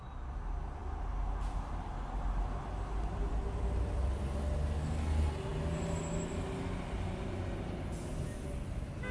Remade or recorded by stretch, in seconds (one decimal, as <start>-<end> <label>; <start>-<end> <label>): 0.0-9.1 recorded